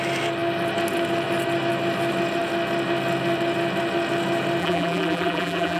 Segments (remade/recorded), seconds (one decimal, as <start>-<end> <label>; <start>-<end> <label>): 0.0-4.6 recorded; 4.6-5.8 remade

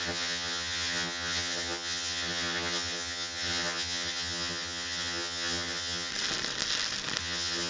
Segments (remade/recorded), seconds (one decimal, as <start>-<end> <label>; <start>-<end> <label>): 0.0-6.1 remade; 6.1-7.2 recorded; 7.2-7.7 remade